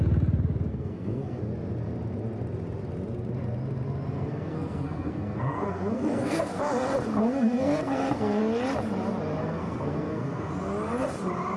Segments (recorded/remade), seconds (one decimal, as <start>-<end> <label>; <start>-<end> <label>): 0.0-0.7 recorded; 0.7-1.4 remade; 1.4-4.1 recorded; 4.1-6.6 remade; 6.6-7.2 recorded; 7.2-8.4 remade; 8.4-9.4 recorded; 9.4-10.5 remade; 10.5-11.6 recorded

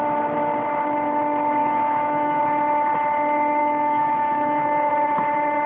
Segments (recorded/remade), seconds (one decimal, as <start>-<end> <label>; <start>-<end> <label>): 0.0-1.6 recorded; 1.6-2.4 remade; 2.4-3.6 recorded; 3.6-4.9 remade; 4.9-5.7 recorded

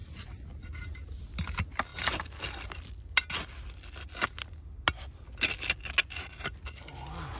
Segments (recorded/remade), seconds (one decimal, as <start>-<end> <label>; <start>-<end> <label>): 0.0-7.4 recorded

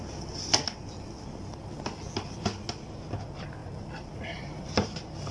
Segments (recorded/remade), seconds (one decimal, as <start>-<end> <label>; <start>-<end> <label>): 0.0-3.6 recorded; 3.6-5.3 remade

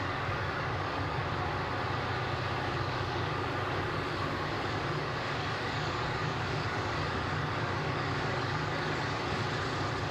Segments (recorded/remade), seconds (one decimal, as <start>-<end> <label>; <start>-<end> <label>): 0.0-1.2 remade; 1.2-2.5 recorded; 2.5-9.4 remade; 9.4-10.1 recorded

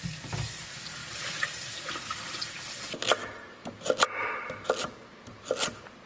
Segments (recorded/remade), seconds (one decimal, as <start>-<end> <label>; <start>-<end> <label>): 0.0-6.1 recorded